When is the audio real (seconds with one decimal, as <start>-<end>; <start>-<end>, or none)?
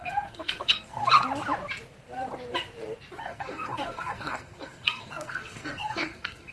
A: 1.0-3.2